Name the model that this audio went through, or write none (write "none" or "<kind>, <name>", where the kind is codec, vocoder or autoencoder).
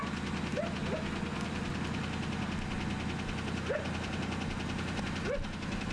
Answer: none